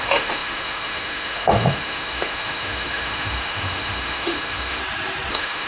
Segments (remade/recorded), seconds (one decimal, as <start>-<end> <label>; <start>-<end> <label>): 0.0-4.8 remade; 4.8-5.3 recorded; 5.3-5.7 remade